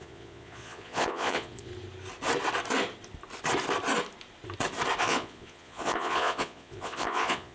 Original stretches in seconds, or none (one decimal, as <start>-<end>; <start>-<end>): 1.7-5.0